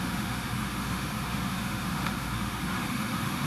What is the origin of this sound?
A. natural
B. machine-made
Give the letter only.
B